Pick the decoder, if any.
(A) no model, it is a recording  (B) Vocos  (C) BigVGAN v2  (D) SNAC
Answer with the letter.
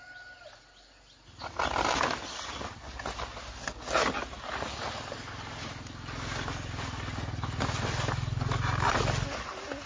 A